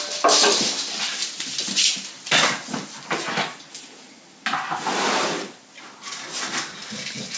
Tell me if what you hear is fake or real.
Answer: real